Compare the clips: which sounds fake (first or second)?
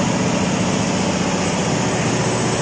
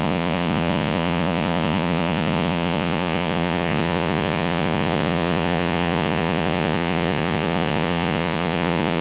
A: second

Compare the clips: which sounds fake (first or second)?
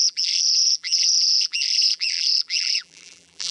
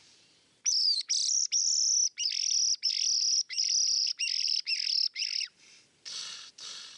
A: first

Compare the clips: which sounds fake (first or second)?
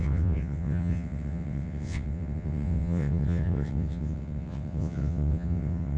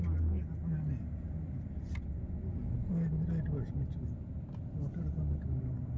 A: first